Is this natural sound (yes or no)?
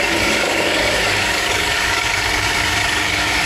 no